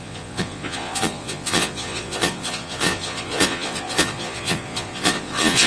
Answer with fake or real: fake